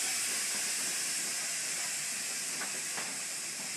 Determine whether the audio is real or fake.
real